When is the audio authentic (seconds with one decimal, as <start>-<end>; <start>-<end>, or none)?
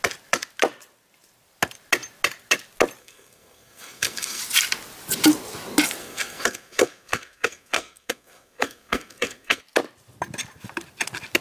0.0-3.0; 4.4-6.0; 9.6-11.4